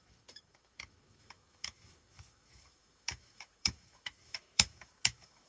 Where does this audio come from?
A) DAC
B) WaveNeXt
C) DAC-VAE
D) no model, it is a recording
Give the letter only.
C